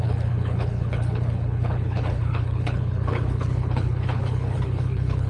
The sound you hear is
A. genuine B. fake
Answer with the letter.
B